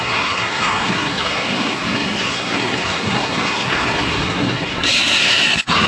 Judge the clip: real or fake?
fake